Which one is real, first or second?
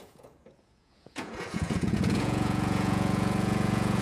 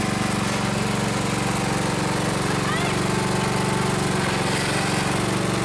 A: second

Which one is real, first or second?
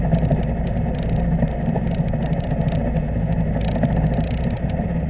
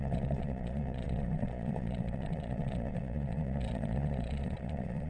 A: first